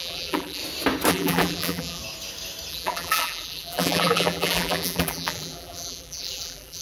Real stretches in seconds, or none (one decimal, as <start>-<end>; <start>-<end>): 0.6-1.1; 2.0-2.7